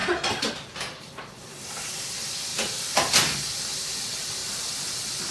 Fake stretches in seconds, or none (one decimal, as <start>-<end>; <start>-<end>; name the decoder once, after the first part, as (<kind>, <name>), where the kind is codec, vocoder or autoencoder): 0.5-2.5 (vocoder, BigVGAN v2); 3.6-4.4